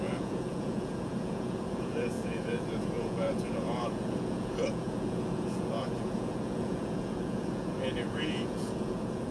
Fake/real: fake